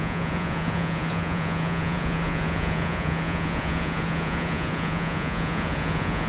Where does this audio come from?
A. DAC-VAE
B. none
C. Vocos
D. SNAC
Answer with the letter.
C